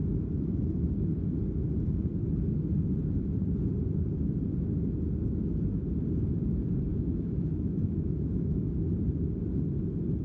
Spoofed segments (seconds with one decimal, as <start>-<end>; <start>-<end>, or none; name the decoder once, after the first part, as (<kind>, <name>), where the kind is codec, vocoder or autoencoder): 6.9-8.6 (autoencoder, DAC-VAE)